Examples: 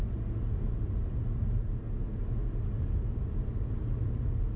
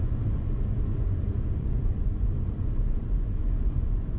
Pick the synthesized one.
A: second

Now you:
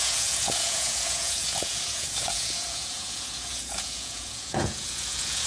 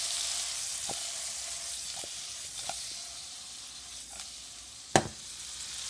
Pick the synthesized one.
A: first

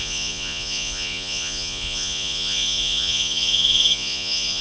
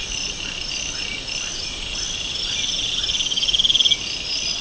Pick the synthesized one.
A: first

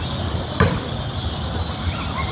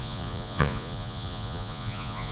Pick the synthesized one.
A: second